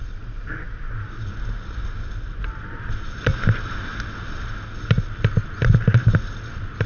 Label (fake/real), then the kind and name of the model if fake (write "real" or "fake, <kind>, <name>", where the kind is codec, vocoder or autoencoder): real